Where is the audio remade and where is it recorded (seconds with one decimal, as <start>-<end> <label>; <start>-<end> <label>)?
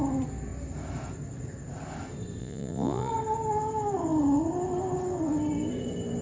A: 0.0-2.4 recorded; 2.4-3.1 remade; 3.1-6.2 recorded